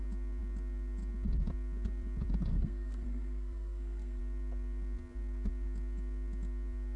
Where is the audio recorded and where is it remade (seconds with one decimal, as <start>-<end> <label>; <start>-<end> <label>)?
0.0-2.5 recorded; 2.5-4.2 remade; 4.2-7.0 recorded